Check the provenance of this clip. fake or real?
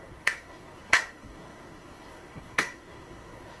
fake